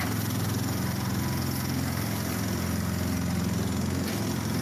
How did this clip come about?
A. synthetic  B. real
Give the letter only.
B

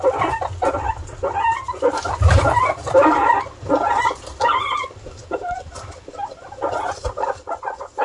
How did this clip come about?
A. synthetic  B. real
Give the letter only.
A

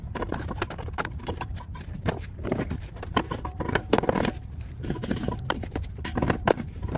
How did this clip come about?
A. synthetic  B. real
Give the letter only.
A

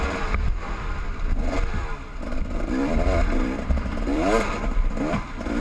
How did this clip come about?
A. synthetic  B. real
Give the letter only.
A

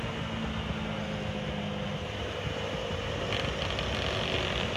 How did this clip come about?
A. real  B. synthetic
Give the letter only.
A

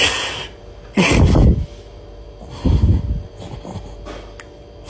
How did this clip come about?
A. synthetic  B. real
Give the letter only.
B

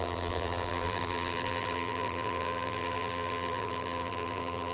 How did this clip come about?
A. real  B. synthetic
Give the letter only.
B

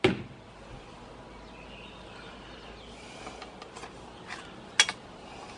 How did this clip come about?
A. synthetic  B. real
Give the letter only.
B